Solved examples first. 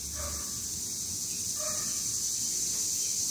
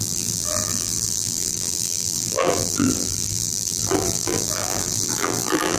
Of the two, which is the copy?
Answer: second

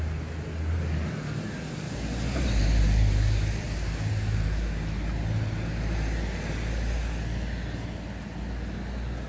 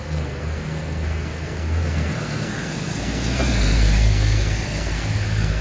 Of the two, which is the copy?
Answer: second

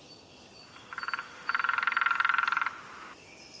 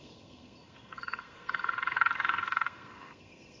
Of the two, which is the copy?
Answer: second